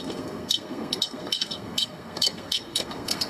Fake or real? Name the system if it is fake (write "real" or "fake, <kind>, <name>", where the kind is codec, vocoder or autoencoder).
fake, codec, SNAC